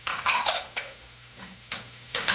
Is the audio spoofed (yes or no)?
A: yes